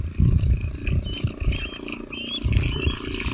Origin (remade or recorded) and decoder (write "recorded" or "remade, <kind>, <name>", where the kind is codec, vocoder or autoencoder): recorded